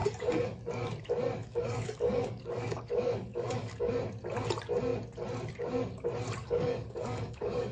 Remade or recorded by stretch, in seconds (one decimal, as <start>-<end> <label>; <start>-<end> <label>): 0.0-0.7 remade; 0.7-1.4 recorded; 1.4-3.9 remade; 3.9-6.4 recorded; 6.4-7.7 remade